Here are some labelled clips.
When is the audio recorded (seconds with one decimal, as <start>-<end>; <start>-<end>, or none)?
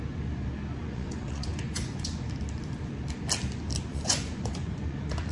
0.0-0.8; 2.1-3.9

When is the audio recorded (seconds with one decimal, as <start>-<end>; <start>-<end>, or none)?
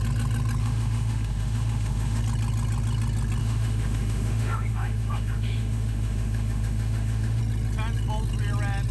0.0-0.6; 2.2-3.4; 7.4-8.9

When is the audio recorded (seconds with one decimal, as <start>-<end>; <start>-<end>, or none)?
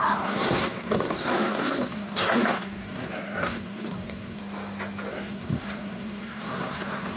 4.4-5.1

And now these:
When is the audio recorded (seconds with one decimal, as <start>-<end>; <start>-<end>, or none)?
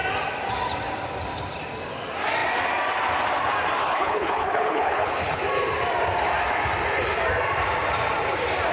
0.0-3.8; 5.4-8.7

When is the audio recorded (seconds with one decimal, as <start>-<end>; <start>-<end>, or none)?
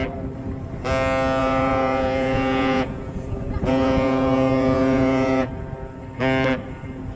0.0-1.4; 5.5-7.2